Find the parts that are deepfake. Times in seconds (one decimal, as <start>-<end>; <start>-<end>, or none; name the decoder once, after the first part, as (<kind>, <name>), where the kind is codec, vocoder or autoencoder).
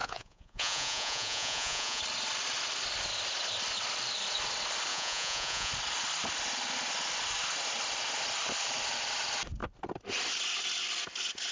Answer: 0.0-2.0 (vocoder, Vocos); 4.9-5.7